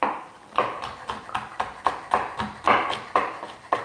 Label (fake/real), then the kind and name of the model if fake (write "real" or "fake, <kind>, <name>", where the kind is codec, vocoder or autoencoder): real